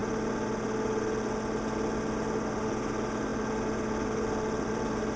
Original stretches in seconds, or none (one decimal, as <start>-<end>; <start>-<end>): 0.0-5.2